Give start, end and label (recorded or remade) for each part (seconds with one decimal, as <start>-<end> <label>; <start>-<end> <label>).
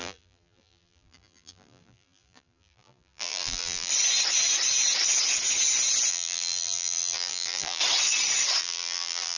0.0-3.9 remade; 3.9-6.1 recorded; 6.1-7.8 remade; 7.8-8.6 recorded; 8.6-9.4 remade